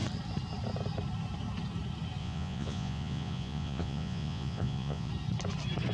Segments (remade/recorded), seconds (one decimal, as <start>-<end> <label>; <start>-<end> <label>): 0.0-2.2 recorded; 2.2-5.1 remade; 5.1-5.9 recorded